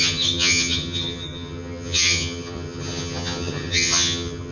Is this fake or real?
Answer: fake